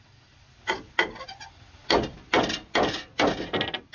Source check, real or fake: real